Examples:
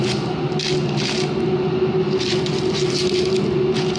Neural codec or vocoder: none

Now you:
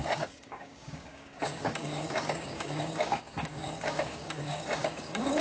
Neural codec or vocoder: codec, DAC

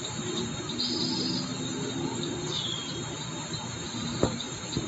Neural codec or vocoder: none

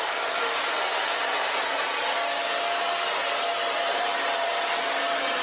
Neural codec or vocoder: none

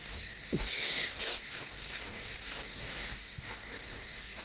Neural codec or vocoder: codec, DAC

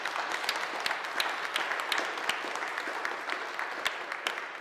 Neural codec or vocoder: none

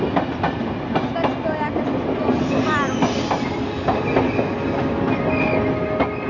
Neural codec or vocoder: none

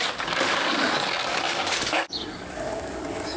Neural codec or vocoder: codec, DAC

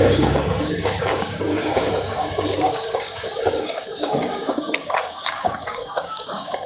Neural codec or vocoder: codec, DAC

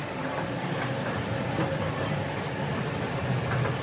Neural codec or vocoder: none